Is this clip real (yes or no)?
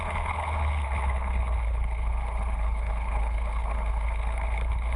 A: no